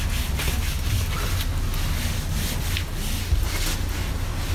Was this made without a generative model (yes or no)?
yes